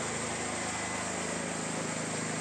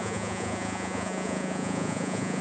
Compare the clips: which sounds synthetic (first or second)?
second